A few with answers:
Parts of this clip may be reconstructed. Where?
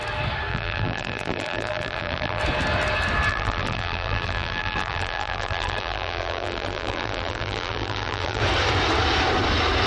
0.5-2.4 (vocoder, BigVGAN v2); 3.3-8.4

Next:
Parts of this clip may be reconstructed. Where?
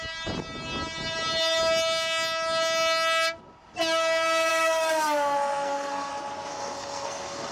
4.5-6.1 (codec, SNAC); 6.5-7.5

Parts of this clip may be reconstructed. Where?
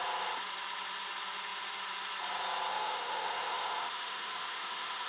2.7-5.1 (autoencoder, DAC-VAE)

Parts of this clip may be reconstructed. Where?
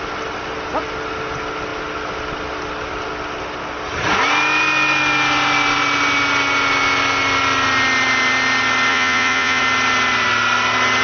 8.9-9.6 (vocoder, Vocos)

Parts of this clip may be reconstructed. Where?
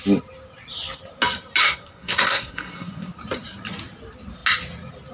1.6-3.1 (codec, SNAC)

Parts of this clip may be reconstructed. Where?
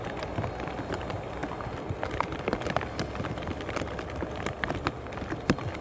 none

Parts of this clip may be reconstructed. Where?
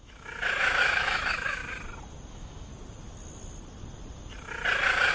0.0-1.6 (autoencoder, DAC-VAE); 2.3-2.7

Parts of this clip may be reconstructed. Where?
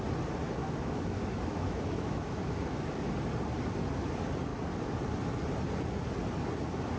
0.6-3.0 (autoencoder, DAC-VAE)